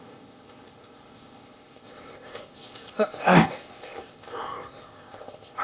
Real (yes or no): no